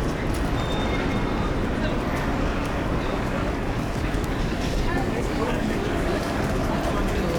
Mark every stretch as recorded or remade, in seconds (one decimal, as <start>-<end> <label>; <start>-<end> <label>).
0.0-2.3 recorded; 2.3-6.7 remade; 6.7-7.4 recorded